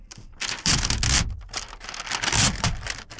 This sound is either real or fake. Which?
real